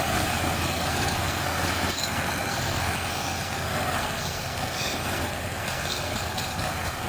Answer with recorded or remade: remade